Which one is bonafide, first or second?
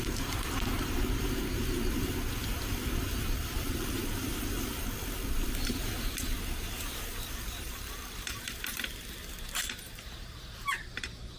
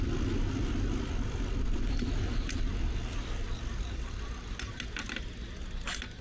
second